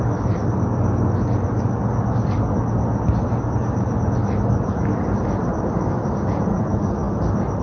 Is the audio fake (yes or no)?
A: no